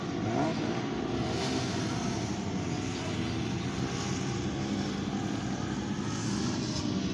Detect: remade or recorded recorded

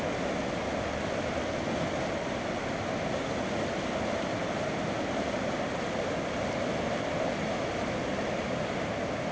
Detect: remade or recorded recorded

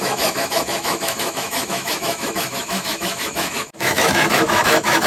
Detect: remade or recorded remade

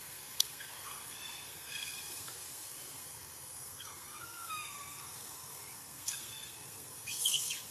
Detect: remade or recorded remade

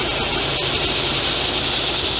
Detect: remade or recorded recorded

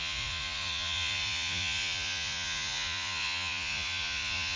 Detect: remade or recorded remade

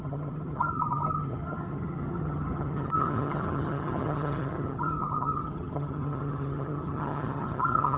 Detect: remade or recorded remade